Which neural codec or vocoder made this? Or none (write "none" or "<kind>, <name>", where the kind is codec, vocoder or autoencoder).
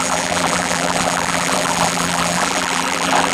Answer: vocoder, BigVGAN v2